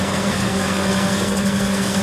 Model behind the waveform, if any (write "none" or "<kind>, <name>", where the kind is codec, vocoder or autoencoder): codec, SNAC